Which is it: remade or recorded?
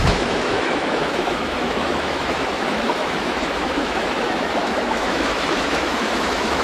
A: remade